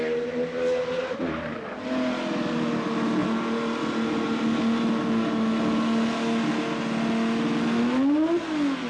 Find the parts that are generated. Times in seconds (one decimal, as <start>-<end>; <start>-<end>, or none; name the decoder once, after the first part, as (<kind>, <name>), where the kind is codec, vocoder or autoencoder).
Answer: none